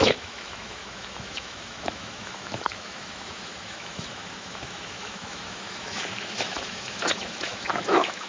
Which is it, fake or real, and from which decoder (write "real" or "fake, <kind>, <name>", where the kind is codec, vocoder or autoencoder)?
fake, autoencoder, DAC-VAE